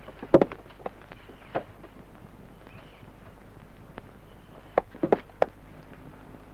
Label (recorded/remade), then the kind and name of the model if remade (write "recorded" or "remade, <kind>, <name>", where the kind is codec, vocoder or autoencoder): recorded